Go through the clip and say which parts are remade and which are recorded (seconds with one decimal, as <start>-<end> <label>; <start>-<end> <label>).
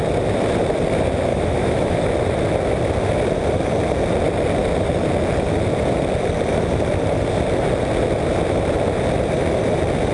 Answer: 0.0-1.3 recorded; 1.3-2.0 remade; 2.0-10.1 recorded